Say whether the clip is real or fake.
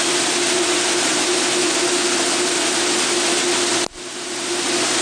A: real